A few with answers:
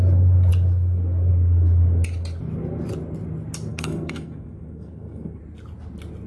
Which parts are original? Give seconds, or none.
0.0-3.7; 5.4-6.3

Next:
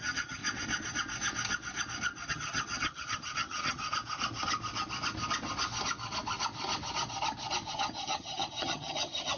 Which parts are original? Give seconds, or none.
0.4-2.3; 3.8-7.7

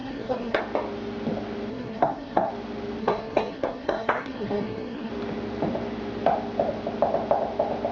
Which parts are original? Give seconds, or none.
0.6-1.7; 2.5-3.0; 5.1-7.9

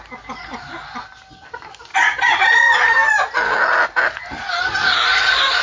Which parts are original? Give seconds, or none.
0.0-5.6

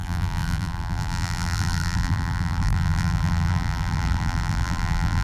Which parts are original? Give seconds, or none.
none

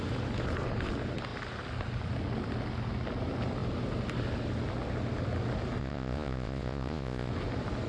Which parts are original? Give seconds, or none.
0.0-5.8; 7.3-7.9

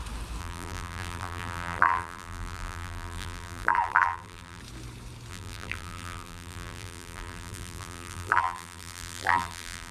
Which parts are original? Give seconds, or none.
0.0-0.4; 4.6-5.3

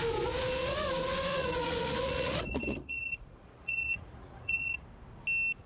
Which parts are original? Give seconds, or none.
0.0-1.4; 4.8-5.7